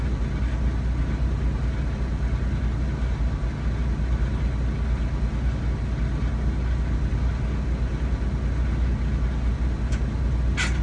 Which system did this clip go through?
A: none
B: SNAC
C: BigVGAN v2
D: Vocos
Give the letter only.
A